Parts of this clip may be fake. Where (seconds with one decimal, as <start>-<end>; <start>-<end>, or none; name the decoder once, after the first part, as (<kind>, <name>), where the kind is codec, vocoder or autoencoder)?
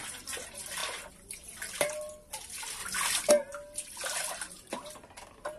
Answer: none